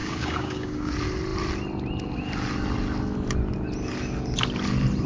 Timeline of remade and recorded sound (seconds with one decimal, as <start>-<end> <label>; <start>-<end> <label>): 0.0-0.9 remade; 0.9-5.1 recorded